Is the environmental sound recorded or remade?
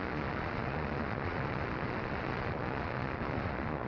remade